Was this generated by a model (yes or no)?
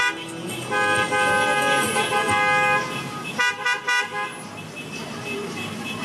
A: no